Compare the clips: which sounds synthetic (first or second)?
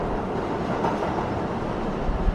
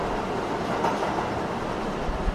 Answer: first